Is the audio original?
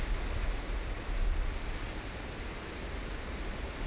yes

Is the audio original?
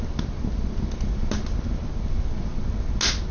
yes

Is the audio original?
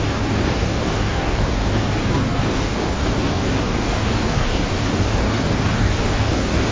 no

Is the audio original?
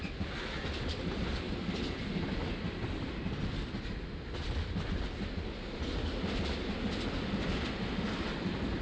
yes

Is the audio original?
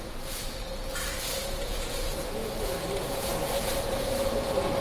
no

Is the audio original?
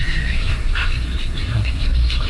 no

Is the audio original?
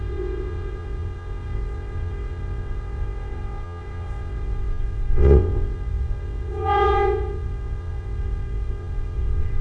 no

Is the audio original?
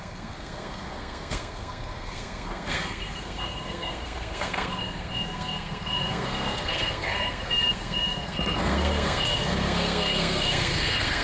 no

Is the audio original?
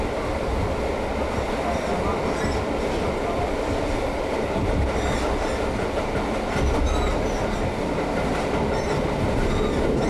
yes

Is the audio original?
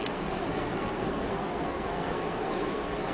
no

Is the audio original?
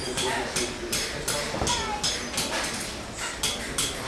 yes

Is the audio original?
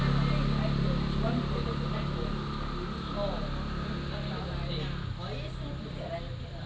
yes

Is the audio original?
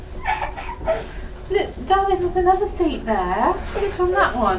yes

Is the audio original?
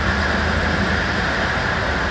yes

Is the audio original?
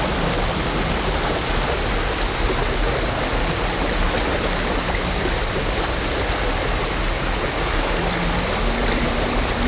yes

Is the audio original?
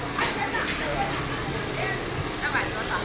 yes